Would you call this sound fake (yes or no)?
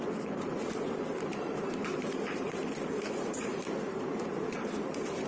yes